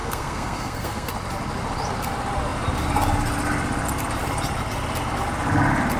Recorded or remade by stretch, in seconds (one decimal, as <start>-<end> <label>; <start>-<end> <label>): 0.0-1.1 remade; 1.1-6.0 recorded

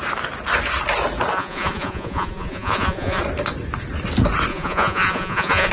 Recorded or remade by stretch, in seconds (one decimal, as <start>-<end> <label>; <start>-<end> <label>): 0.0-1.3 recorded; 1.3-3.2 remade; 3.2-4.5 recorded; 4.5-5.7 remade

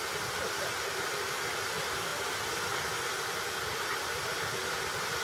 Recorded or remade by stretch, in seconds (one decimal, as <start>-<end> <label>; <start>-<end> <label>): 0.0-5.2 recorded

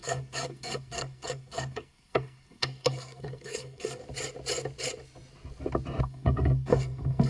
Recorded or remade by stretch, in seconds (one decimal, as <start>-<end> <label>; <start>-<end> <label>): 0.0-4.0 remade; 4.0-6.0 recorded; 6.0-7.3 remade